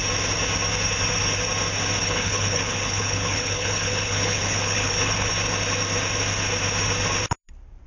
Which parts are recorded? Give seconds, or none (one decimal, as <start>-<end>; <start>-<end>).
0.0-2.0; 5.3-7.9